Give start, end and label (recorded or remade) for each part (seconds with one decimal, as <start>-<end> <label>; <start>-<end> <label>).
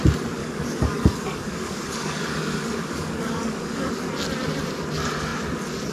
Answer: 0.0-0.4 recorded; 0.4-3.9 remade; 3.9-5.9 recorded